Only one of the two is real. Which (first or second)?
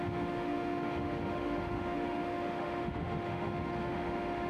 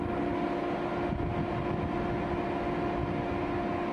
second